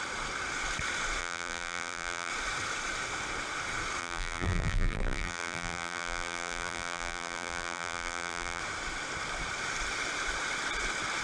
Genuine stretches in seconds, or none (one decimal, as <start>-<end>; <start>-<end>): 0.0-1.2; 2.3-4.0; 8.6-11.2